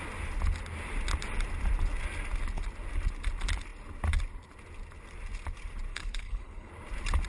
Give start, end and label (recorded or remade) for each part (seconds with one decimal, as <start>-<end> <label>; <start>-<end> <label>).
0.0-5.9 recorded; 5.9-6.7 remade; 6.7-7.3 recorded